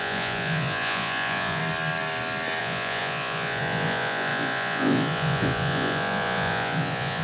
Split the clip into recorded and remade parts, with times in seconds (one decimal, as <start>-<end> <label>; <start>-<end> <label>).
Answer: 0.0-1.6 remade; 1.6-2.6 recorded; 2.6-7.2 remade